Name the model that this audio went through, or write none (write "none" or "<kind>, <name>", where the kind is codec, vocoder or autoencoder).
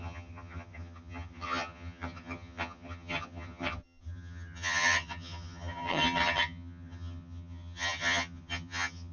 vocoder, HiFi-GAN